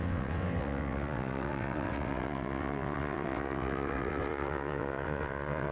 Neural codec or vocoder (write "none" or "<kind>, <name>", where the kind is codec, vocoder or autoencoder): vocoder, WaveNeXt